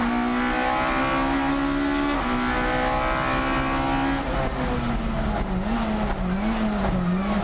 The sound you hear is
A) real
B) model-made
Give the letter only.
A